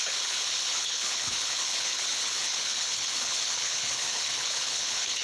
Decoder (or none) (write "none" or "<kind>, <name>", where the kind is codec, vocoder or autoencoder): codec, HILCodec